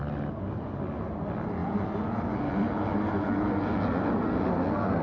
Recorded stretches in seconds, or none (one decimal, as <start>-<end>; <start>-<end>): 0.0-5.0

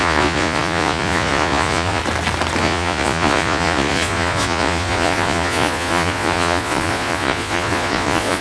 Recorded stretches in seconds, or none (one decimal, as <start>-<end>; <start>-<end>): 2.0-2.6

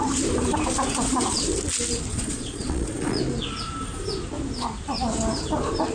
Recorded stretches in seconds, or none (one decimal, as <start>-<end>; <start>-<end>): 0.0-2.1; 3.2-5.9

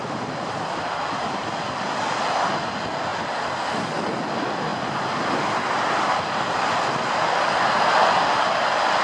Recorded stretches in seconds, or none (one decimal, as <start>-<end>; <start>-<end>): 0.0-9.0

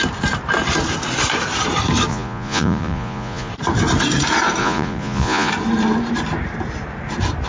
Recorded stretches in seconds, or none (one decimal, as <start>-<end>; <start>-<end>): 0.0-2.1; 3.5-4.6; 5.5-7.5